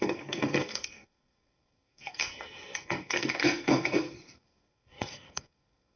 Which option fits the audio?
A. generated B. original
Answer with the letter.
A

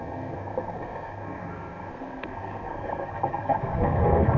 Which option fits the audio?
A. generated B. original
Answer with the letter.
A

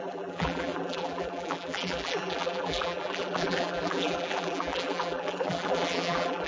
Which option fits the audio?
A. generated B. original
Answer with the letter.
A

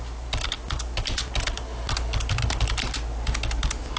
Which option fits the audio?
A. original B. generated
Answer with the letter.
A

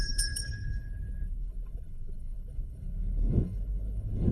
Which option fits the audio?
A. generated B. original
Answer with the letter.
A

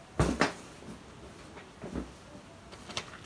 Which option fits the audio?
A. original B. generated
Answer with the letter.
A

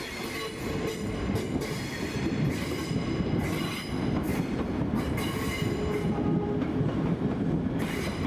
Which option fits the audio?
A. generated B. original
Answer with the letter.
B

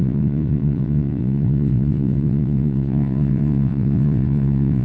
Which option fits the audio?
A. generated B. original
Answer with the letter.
A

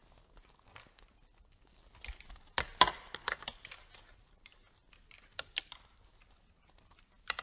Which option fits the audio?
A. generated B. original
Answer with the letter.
B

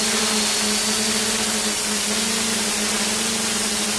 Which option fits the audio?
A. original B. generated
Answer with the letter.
A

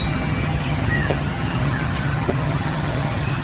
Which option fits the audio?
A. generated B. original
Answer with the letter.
A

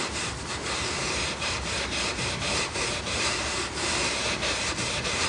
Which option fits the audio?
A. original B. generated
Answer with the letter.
B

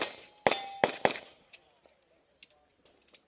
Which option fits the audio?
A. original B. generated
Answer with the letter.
A